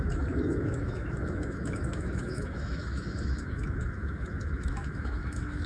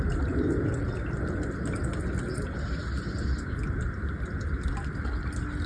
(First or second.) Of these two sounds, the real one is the second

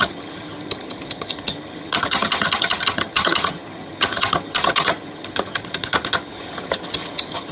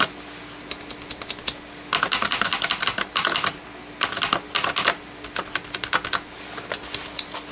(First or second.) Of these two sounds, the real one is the second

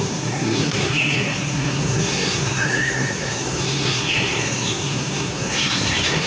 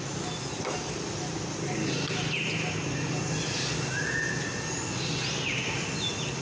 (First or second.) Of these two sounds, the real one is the second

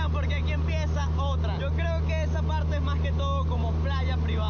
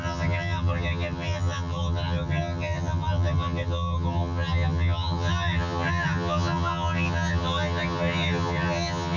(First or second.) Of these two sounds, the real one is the first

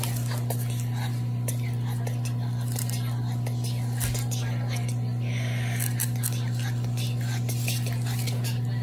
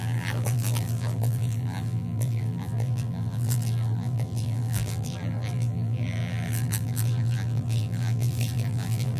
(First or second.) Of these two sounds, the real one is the first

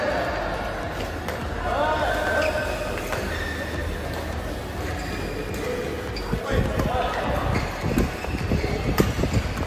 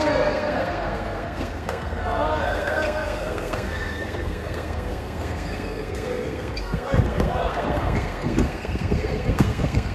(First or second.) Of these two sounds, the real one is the first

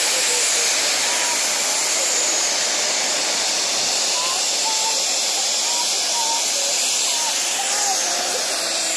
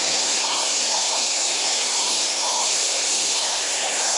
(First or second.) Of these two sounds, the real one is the first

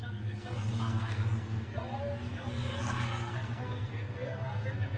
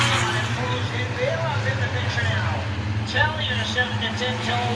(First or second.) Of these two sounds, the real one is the second